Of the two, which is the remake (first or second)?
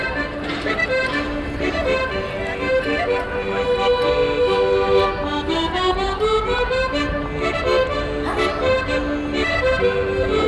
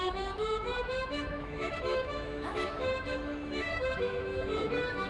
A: second